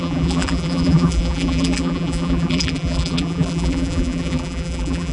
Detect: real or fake fake